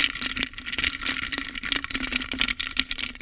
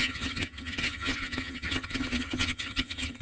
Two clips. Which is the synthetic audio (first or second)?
second